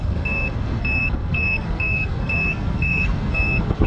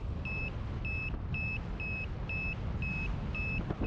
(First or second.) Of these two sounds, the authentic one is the second